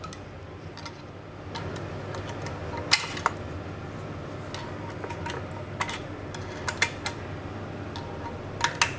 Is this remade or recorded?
recorded